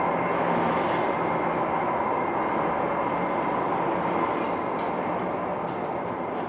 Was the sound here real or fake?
real